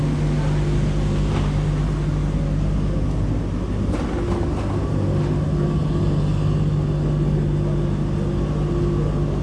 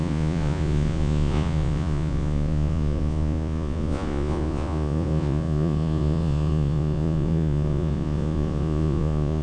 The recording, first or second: first